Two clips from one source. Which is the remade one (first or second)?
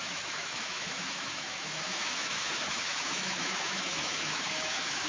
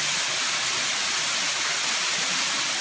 first